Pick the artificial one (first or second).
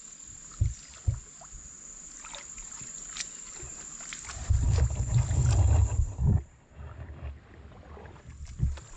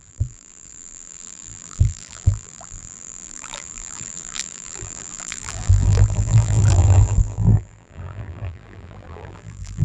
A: second